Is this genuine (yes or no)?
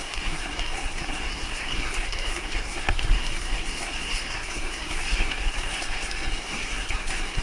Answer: no